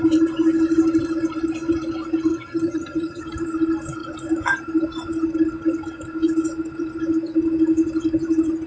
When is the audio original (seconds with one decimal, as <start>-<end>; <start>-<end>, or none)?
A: 0.0-2.3; 3.2-8.7